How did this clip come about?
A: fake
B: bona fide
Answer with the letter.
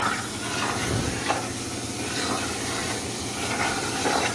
B